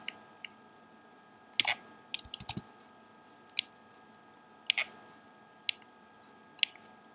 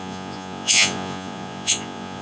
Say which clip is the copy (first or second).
second